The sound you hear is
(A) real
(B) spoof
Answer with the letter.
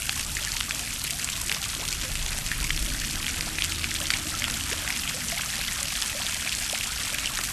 A